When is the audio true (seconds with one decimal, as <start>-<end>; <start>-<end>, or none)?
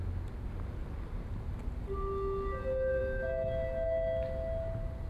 0.0-5.1